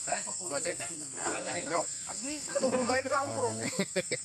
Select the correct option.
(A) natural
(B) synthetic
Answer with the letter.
B